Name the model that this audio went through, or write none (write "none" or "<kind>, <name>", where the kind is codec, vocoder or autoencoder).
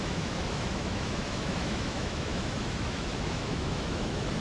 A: autoencoder, DAC-VAE